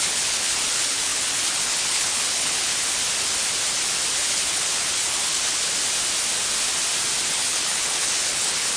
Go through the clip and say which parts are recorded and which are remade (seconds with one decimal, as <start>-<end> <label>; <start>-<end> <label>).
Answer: 0.0-2.7 remade; 2.7-4.1 recorded; 4.1-5.7 remade; 5.7-7.3 recorded; 7.3-8.8 remade